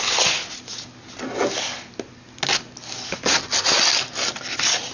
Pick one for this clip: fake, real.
real